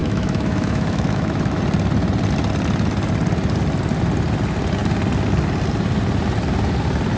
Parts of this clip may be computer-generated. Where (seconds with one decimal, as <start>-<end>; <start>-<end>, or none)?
0.0-1.6